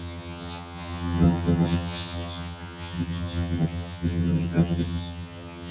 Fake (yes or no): yes